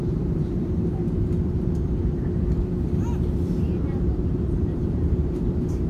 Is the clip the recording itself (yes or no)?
no